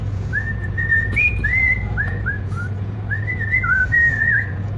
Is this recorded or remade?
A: remade